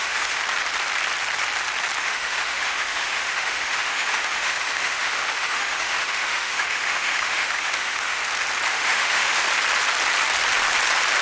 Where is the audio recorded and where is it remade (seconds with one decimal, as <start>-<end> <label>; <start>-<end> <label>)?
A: 0.0-0.4 remade; 0.4-2.0 recorded; 2.0-8.2 remade; 8.2-8.7 recorded; 8.7-9.4 remade; 9.4-11.2 recorded